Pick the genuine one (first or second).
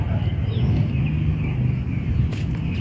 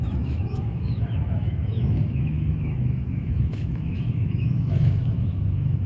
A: first